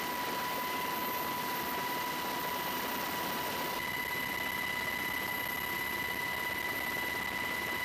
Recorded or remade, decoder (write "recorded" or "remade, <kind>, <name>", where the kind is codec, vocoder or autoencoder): recorded